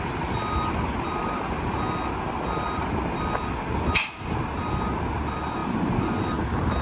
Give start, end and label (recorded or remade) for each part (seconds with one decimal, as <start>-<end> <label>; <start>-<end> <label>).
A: 0.0-5.6 recorded; 5.6-6.8 remade